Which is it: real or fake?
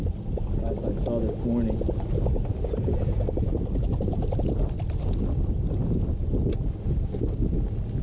real